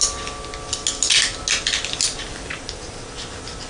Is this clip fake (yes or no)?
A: no